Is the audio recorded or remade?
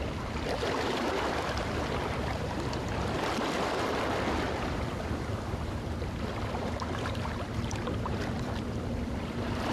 remade